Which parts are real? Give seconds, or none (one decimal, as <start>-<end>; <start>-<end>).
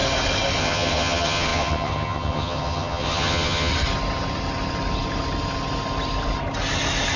0.0-0.6; 3.7-7.2